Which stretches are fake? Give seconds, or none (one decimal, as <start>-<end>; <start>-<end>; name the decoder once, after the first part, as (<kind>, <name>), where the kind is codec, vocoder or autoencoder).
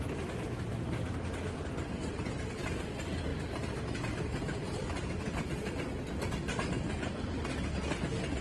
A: none